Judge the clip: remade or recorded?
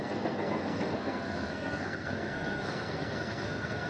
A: remade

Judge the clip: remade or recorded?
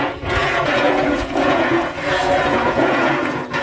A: remade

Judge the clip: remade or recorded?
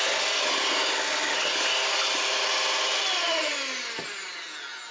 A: recorded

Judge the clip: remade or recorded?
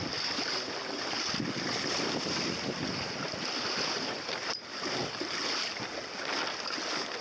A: recorded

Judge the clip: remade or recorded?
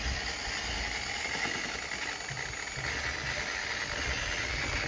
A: recorded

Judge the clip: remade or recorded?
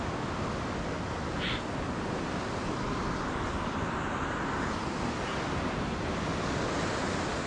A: recorded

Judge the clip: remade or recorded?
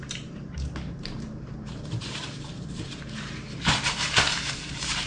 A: remade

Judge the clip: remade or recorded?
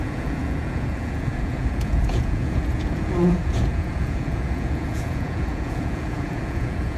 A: remade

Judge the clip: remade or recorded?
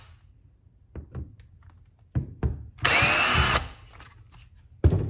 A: recorded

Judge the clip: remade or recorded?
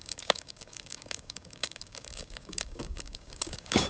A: remade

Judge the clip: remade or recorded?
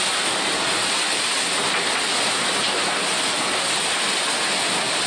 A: recorded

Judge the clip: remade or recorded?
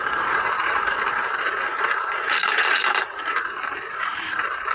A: remade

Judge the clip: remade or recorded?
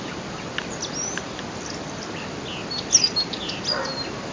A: recorded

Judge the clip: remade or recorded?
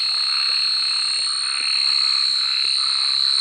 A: recorded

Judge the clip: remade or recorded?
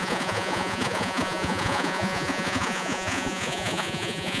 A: remade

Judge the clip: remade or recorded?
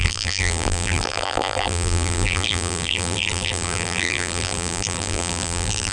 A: remade